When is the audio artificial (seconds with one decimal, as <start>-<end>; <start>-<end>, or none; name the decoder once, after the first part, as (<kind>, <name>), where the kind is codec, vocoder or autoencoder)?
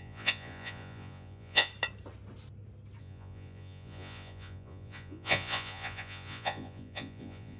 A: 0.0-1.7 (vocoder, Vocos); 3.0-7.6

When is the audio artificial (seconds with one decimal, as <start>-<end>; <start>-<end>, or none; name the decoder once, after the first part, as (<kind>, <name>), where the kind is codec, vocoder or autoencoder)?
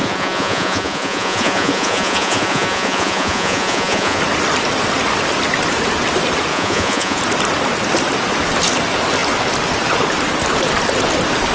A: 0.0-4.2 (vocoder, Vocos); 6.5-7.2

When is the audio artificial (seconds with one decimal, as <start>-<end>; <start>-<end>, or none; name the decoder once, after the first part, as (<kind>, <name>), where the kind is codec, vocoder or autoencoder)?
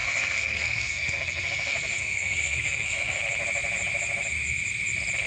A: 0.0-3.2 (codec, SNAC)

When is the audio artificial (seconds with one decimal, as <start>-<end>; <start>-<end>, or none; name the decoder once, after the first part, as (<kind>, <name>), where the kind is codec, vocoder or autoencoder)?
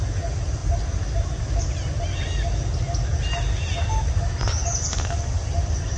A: 0.6-1.4 (vocoder, BigVGAN v2)